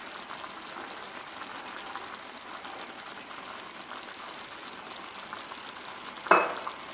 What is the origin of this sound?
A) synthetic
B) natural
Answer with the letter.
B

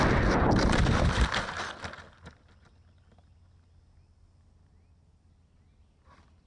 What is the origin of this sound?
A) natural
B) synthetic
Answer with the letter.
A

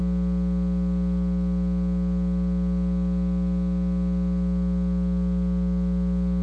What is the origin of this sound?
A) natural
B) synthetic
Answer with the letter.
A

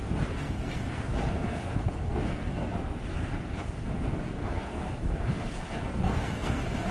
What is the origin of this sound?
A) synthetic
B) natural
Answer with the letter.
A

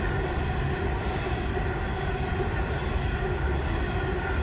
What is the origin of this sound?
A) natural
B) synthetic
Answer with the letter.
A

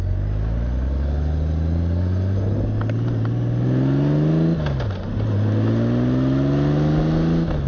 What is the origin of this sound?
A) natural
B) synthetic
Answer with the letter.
A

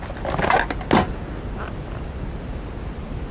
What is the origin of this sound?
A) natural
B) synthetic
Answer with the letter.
A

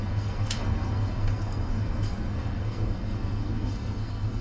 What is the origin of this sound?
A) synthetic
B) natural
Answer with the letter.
A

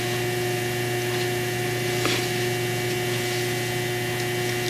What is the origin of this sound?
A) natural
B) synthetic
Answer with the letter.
A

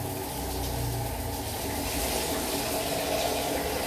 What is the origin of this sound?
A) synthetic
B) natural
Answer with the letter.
B